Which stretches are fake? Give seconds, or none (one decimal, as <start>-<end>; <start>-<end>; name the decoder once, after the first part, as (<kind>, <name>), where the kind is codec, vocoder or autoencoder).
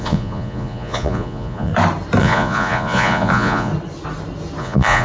0.0-1.7 (vocoder, Vocos); 2.2-3.7; 4.6-5.0